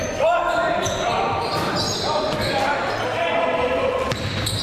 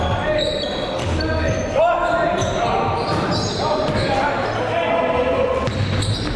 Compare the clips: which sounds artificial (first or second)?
first